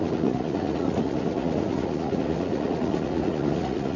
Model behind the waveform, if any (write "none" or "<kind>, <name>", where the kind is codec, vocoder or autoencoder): vocoder, Vocos